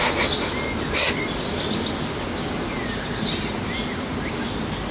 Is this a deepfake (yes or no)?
no